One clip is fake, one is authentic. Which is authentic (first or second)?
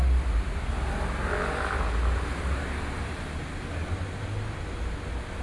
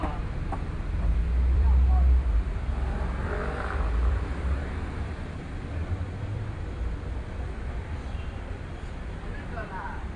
first